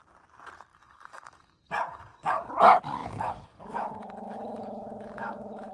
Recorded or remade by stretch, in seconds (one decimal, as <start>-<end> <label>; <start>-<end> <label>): 0.0-0.7 recorded; 0.7-2.5 remade; 2.5-3.0 recorded; 3.0-5.7 remade